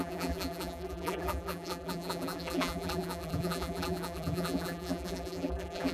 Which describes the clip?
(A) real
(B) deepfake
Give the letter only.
B